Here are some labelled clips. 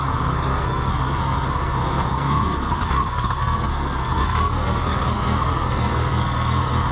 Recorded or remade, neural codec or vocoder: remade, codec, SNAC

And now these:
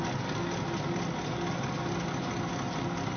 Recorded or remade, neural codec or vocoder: recorded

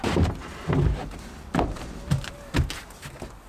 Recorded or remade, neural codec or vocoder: recorded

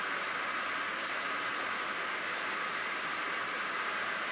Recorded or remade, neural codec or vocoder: remade, vocoder, BigVGAN v2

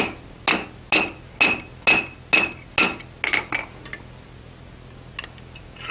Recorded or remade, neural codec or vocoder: recorded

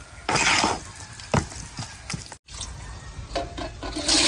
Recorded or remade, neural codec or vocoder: recorded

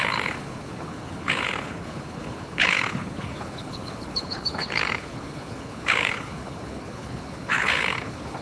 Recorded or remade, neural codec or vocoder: remade, codec, HILCodec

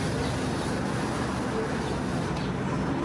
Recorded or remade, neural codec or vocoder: recorded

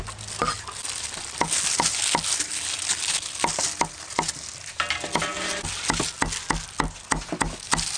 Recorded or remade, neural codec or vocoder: recorded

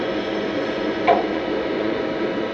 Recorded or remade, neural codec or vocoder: remade, vocoder, Vocos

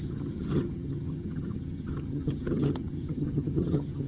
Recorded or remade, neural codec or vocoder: remade, vocoder, HiFi-GAN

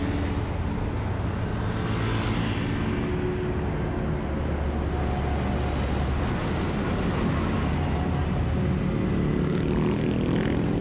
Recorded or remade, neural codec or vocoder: recorded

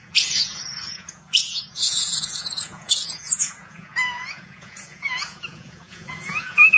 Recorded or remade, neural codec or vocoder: remade, vocoder, Vocos